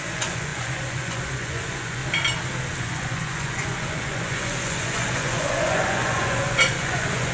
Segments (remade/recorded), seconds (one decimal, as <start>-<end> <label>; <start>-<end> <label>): 0.0-2.0 remade; 2.0-2.8 recorded; 2.8-7.3 remade